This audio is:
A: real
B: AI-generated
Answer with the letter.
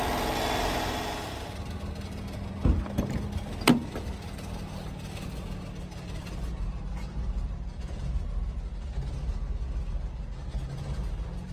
A